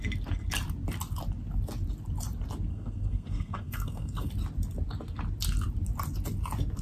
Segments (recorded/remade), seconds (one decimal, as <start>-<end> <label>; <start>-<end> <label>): 0.0-2.7 recorded; 2.7-4.3 remade; 4.3-6.8 recorded